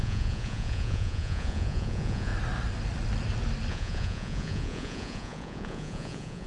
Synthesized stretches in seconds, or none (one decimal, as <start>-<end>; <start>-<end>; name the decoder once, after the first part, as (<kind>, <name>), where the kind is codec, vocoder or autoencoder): 0.0-2.3 (vocoder, Vocos); 3.7-6.5